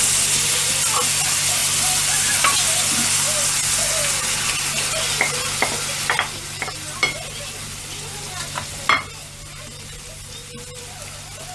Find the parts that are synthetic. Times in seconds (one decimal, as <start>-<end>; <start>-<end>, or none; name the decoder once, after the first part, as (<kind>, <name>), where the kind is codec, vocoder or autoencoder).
none